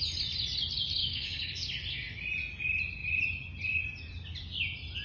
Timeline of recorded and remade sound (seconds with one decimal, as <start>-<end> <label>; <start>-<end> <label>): 0.0-1.0 recorded; 1.0-1.5 remade; 1.5-5.0 recorded